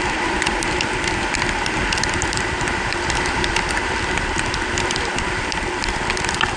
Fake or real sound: real